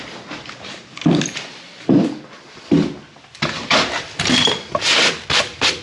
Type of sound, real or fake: fake